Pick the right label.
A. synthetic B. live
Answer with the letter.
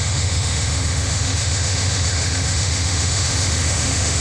A